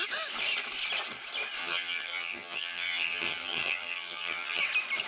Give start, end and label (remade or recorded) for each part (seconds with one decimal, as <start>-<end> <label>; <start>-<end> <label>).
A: 0.0-1.6 recorded; 1.6-4.6 remade; 4.6-5.1 recorded